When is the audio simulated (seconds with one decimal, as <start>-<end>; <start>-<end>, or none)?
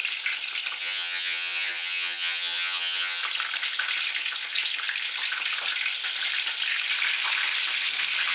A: 0.8-3.2